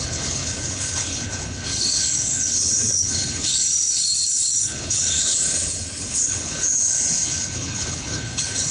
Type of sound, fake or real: fake